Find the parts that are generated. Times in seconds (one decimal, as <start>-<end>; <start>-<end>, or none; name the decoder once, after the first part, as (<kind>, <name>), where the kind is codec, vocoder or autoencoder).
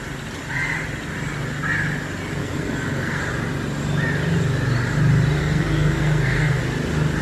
2.4-3.2 (codec, SNAC); 5.4-6.6